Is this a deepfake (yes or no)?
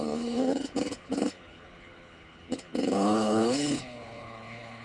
yes